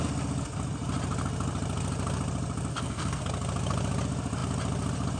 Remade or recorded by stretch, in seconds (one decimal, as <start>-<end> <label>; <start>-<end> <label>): 0.0-2.7 recorded; 2.7-3.2 remade; 3.2-5.2 recorded